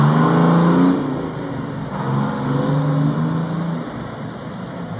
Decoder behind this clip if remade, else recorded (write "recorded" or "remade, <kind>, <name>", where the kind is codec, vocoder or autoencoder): recorded